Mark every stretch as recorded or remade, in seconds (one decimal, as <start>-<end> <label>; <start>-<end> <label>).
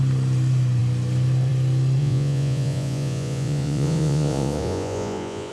0.0-2.0 recorded; 2.0-5.5 remade